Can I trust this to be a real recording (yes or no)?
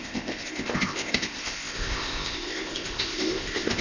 no